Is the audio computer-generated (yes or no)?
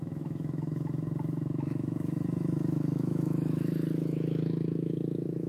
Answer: yes